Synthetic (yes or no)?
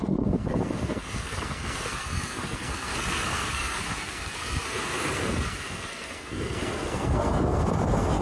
yes